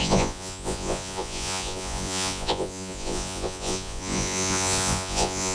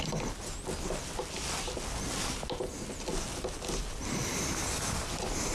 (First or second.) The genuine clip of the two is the second